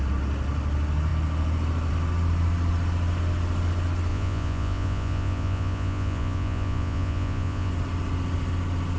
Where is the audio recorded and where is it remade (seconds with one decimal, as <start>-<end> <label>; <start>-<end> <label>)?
0.0-4.1 recorded; 4.1-7.7 remade; 7.7-9.0 recorded